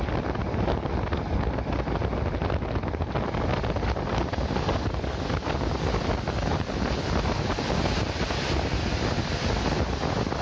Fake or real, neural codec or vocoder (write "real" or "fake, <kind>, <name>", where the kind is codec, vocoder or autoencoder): real